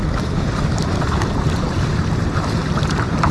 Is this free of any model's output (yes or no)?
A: yes